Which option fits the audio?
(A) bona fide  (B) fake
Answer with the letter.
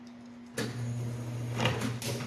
A